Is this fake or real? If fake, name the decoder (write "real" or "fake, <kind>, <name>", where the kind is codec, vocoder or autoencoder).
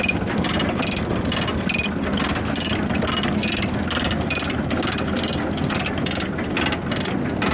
real